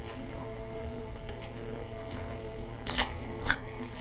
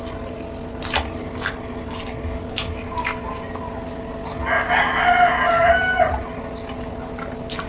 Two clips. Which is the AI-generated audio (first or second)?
first